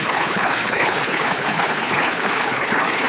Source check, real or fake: fake